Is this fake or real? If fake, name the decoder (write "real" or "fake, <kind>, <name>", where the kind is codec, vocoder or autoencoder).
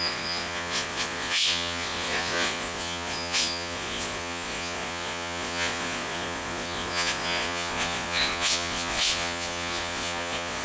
fake, vocoder, Vocos